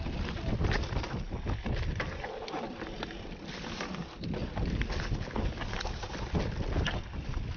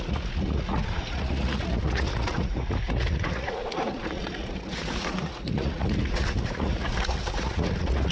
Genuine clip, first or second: first